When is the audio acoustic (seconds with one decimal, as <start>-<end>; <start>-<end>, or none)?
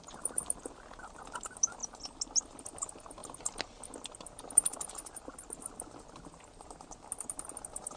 0.0-8.0